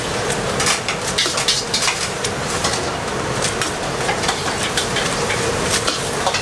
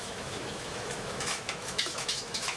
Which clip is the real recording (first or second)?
first